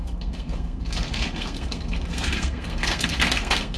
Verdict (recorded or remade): remade